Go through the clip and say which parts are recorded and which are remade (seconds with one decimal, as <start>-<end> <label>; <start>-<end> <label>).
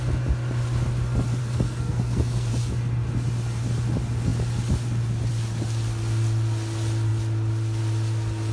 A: 0.0-1.4 recorded; 1.4-2.5 remade; 2.5-8.5 recorded